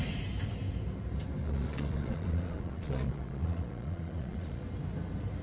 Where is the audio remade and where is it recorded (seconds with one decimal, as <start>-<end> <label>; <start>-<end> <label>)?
0.0-1.4 recorded; 1.4-4.6 remade; 4.6-5.4 recorded